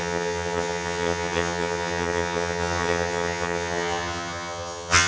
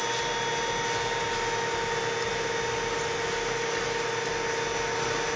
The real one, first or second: second